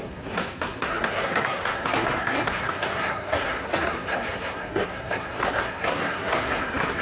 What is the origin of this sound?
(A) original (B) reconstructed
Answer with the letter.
B